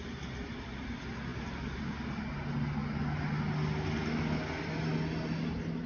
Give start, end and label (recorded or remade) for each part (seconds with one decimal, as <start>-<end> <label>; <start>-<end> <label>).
0.0-5.9 recorded